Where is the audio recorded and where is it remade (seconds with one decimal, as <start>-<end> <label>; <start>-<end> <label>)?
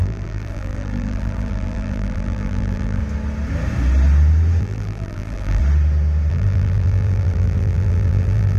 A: 0.0-3.0 remade; 3.0-4.6 recorded; 4.6-5.6 remade; 5.6-6.3 recorded; 6.3-8.6 remade